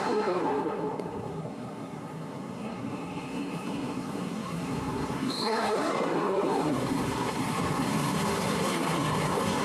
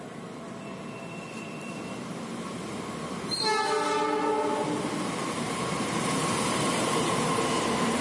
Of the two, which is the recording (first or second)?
second